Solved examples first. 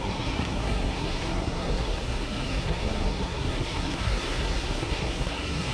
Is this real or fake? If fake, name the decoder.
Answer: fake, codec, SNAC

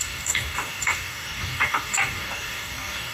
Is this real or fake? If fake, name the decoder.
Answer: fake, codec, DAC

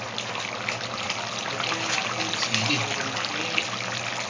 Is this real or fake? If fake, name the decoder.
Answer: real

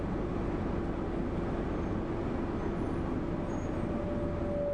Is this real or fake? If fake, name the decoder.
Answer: real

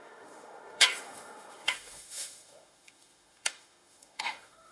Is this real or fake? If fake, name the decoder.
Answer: fake, autoencoder, DAC-VAE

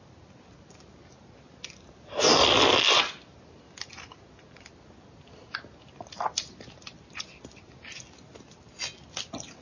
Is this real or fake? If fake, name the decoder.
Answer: real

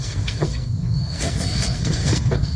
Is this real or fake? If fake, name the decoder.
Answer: fake, codec, SNAC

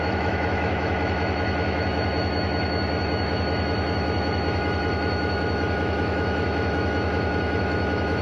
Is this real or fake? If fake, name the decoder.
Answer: fake, autoencoder, DAC-VAE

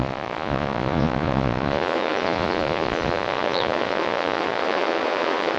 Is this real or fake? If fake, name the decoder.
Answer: fake, vocoder, Vocos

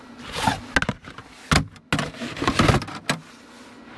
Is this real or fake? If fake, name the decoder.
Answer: real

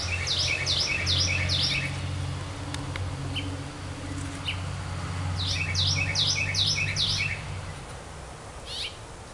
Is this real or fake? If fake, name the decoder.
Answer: real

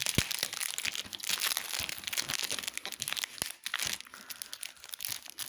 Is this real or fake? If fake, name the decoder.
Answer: real